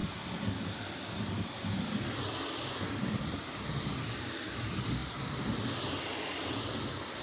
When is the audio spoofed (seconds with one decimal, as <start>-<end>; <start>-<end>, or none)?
5.0-5.5